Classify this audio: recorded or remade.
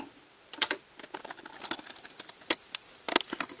recorded